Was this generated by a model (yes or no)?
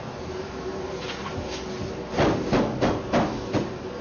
no